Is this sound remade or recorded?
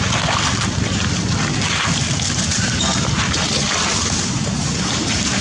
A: recorded